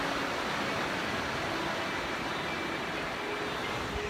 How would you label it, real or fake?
real